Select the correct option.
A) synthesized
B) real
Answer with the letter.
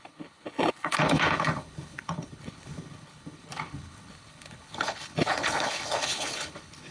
A